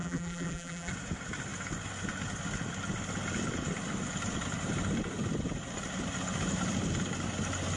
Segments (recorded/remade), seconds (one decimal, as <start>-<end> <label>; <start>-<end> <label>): 0.0-0.9 remade; 0.9-7.8 recorded